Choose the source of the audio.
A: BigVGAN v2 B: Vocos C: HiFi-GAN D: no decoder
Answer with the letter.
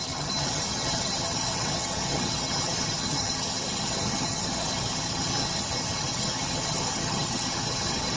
C